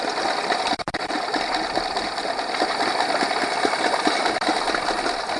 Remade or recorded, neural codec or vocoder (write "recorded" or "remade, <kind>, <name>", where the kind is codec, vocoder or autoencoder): recorded